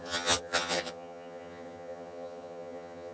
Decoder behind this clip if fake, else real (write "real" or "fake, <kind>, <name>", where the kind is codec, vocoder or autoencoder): fake, vocoder, HiFi-GAN